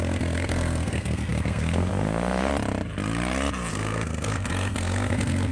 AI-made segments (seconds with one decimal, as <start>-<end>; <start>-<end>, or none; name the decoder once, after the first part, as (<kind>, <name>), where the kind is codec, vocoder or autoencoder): 0.0-2.5 (codec, SNAC); 3.7-5.5